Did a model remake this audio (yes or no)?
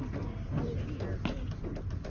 no